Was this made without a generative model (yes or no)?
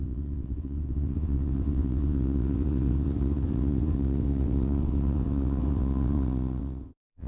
no